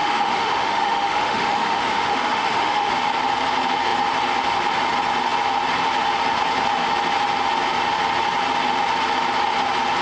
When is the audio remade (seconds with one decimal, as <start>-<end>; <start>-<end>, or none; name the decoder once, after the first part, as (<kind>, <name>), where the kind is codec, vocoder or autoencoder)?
0.0-2.9 (autoencoder, DAC-VAE)